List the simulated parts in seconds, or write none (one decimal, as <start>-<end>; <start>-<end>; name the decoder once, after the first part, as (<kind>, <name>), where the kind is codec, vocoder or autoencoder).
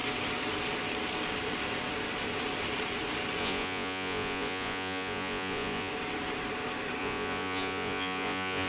3.4-5.9 (vocoder, Vocos); 7.0-8.7